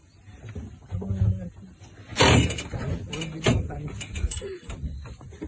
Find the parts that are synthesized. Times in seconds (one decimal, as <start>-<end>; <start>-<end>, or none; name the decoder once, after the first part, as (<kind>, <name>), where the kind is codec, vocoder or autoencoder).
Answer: 2.1-4.6 (vocoder, BigVGAN v2)